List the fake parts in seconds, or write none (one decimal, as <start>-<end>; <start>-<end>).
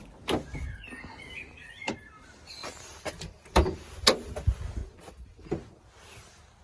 2.6-3.8; 4.8-5.5